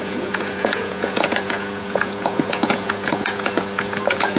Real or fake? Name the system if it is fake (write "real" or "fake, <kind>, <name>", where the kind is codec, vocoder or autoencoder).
fake, vocoder, Vocos